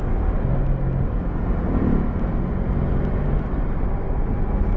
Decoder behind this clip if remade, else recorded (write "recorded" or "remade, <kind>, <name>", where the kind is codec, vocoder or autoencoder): recorded